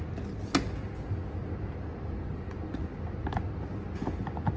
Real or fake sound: real